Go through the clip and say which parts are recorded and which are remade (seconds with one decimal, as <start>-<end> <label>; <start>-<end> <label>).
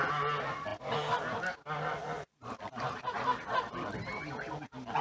0.0-5.0 recorded